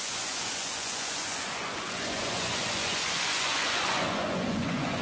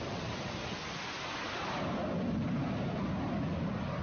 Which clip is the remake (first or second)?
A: first